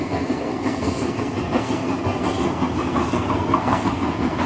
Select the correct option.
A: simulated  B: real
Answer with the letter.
A